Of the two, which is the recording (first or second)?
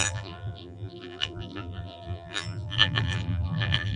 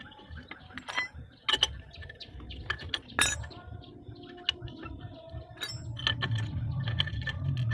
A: second